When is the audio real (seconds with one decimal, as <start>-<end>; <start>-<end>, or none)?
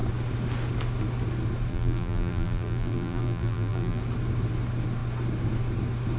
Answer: 0.0-1.7; 4.0-6.2